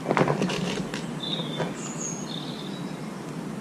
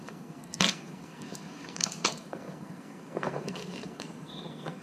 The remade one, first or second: second